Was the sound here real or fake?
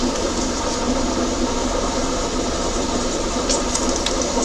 real